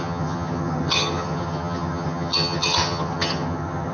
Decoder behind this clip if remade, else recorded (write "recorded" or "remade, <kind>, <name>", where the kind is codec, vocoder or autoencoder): remade, vocoder, HiFi-GAN